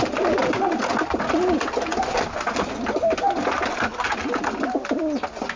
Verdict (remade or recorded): recorded